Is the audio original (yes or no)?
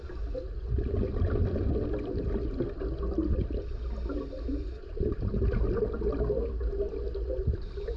yes